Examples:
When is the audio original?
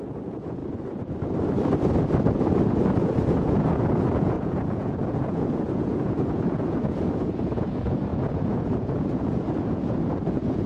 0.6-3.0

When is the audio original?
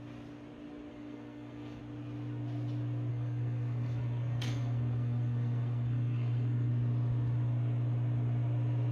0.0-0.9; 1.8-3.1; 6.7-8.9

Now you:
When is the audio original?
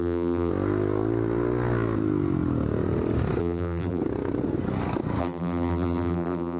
0.5-3.4; 4.0-5.2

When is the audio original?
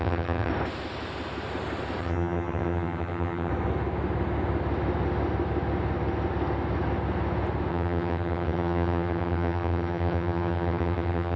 0.5-2.0; 3.5-7.7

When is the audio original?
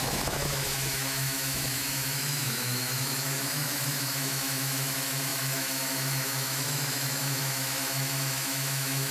none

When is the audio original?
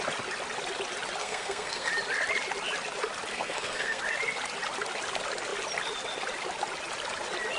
0.0-1.2; 1.9-3.3; 4.0-7.6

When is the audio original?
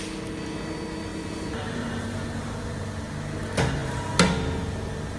0.0-1.1; 3.0-5.2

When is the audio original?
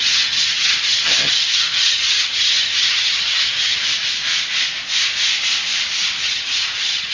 3.8-6.2